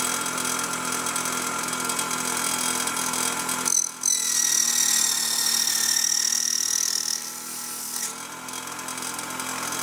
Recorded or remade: recorded